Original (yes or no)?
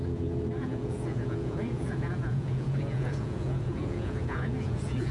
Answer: no